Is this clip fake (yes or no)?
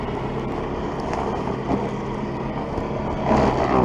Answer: no